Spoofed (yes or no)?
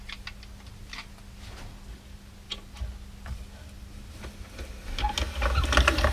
no